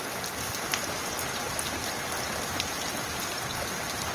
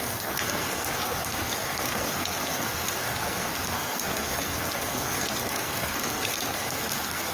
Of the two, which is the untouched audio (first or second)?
first